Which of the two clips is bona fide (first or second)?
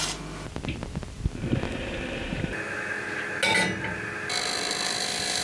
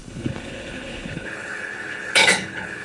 first